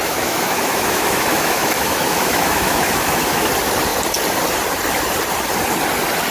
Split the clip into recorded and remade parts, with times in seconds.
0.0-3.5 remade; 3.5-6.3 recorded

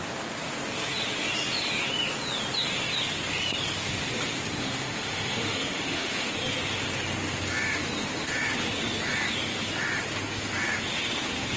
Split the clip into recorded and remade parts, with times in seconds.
0.0-4.6 recorded; 4.6-6.3 remade; 6.3-11.6 recorded

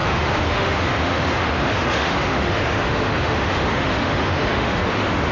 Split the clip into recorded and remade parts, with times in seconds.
0.0-5.3 remade

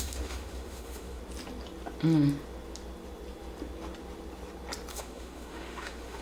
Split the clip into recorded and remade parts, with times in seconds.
0.0-1.2 remade; 1.2-4.9 recorded; 4.9-6.2 remade

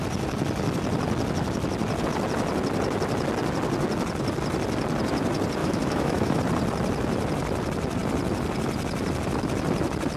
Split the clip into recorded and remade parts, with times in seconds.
0.0-5.6 recorded; 5.6-6.4 remade; 6.4-10.2 recorded

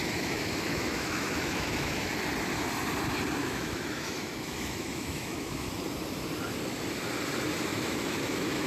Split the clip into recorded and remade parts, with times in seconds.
0.0-2.1 remade; 2.1-3.4 recorded; 3.4-5.7 remade; 5.7-7.7 recorded; 7.7-8.7 remade

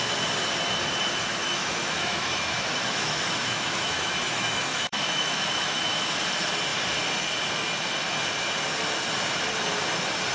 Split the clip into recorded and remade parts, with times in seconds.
0.0-1.3 recorded; 1.3-6.2 remade; 6.2-10.3 recorded